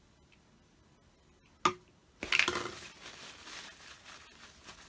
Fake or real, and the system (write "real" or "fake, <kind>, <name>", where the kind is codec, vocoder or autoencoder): real